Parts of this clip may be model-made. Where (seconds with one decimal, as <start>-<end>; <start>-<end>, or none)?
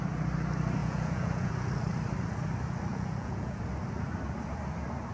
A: 0.8-1.5; 2.9-3.6